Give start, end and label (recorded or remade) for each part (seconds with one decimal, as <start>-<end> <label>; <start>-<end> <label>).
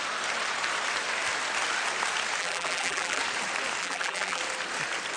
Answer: 0.0-2.4 recorded; 2.4-3.2 remade; 3.2-3.8 recorded; 3.8-4.4 remade; 4.4-5.2 recorded